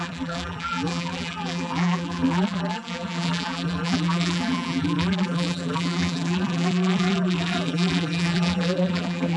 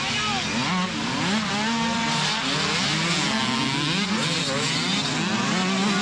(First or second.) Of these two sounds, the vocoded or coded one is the first